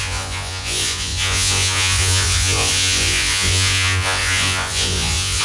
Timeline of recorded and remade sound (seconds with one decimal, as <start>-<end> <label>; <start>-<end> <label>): 0.0-5.4 remade